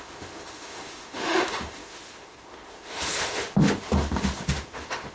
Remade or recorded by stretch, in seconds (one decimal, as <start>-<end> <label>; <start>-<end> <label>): 0.0-5.1 remade